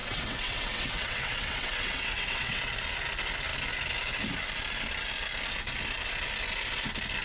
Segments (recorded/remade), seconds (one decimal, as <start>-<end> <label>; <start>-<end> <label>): 0.0-2.7 remade; 2.7-7.2 recorded